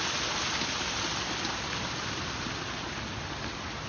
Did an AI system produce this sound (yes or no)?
no